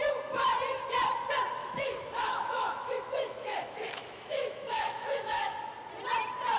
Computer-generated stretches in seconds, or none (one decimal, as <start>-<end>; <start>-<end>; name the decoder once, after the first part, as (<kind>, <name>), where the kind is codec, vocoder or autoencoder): 1.6-5.6 (autoencoder, DAC-VAE)

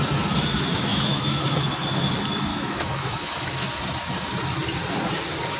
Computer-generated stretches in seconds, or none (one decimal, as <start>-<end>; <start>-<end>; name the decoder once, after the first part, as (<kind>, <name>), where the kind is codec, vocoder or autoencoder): 0.9-1.4 (autoencoder, DAC-VAE); 2.5-3.7

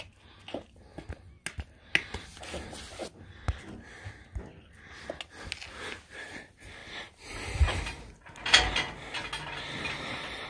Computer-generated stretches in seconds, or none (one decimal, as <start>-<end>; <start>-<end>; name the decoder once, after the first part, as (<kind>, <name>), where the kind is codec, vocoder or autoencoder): none